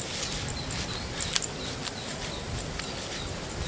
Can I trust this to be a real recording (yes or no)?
yes